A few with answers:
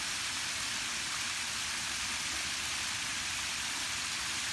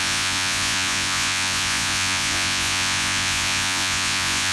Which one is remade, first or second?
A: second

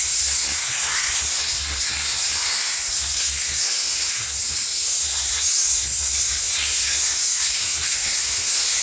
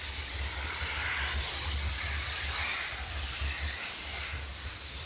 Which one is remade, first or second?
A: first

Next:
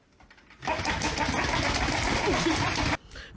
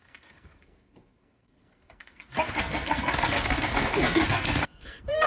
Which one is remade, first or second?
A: second